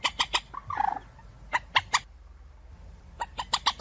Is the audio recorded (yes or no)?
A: yes